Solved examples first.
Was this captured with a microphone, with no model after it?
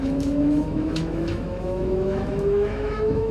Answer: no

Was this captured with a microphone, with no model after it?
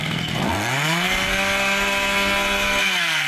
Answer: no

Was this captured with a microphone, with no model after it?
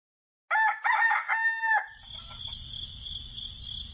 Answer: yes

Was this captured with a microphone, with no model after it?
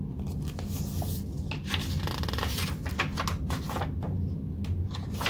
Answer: yes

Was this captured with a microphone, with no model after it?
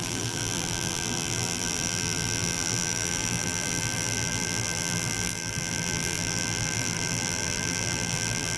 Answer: no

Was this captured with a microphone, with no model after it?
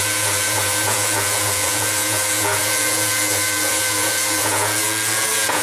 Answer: no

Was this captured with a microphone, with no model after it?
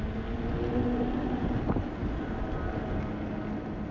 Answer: yes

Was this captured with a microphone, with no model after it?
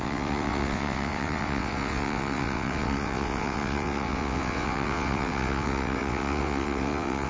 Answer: no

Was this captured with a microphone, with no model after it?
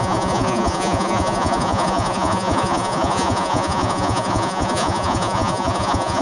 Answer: no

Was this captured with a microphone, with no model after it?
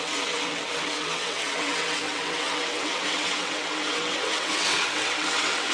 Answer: no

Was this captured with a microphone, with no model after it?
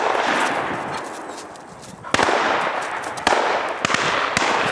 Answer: yes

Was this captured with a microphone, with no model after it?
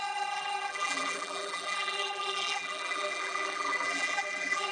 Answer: no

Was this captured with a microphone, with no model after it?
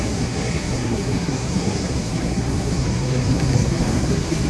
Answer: no